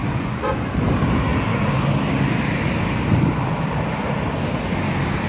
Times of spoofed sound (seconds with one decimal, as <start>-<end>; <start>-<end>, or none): 0.0-0.7